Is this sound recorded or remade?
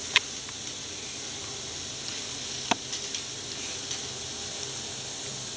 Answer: recorded